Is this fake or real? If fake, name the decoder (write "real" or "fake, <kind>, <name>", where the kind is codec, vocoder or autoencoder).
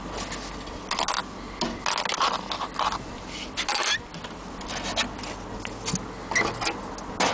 real